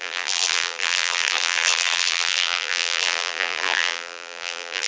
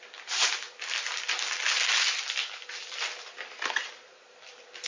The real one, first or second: second